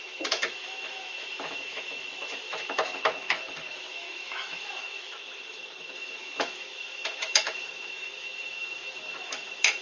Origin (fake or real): fake